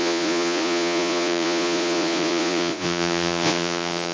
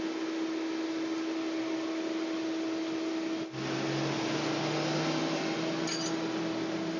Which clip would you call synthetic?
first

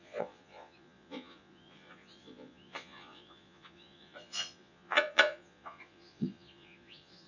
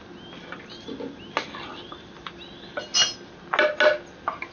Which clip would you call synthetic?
first